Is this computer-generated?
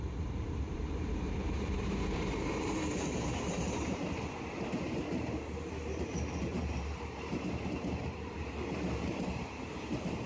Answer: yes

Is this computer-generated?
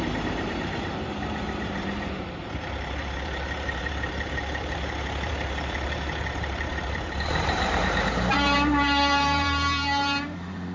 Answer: yes